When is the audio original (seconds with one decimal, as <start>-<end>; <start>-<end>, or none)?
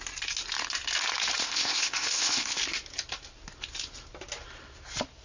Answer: 0.0-1.4; 2.6-5.2